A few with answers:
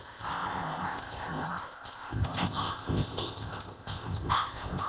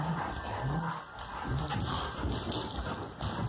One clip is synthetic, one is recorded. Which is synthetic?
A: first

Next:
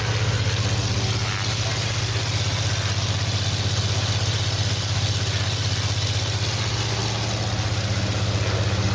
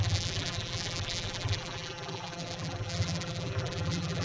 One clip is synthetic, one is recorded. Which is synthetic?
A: second